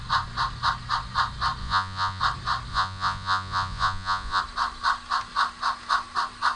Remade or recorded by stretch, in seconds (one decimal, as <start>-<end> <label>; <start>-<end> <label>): 0.0-1.6 recorded; 1.6-2.2 remade; 2.2-2.7 recorded; 2.7-4.4 remade; 4.4-6.6 recorded